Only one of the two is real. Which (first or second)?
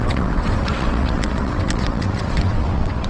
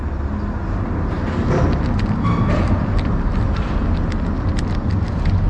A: second